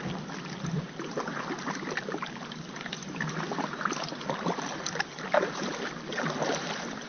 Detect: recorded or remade recorded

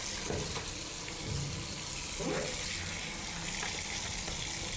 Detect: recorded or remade recorded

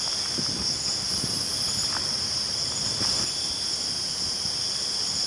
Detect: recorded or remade recorded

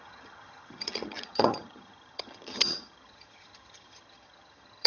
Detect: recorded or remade remade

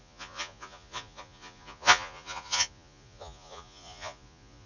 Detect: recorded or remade remade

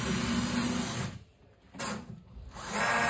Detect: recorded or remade recorded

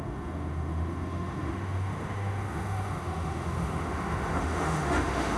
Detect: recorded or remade remade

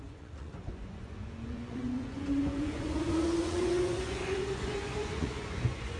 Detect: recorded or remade remade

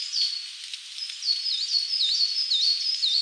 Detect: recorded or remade recorded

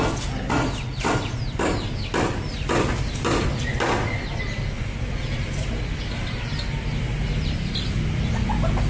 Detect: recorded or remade recorded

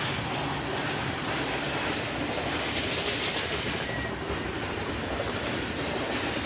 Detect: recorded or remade recorded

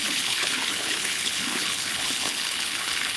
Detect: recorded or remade remade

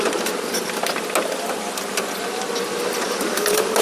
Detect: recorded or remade recorded